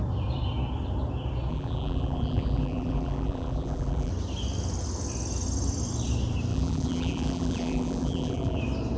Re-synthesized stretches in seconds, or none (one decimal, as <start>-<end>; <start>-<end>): 1.5-4.1; 6.5-8.6